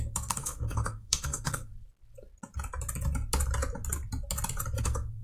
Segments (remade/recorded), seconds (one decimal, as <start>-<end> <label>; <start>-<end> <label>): 0.0-1.7 remade; 1.7-4.8 recorded; 4.8-5.2 remade